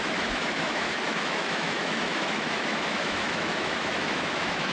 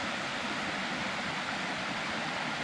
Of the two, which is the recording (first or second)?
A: second